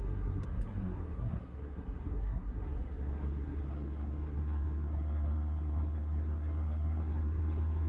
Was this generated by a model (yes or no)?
yes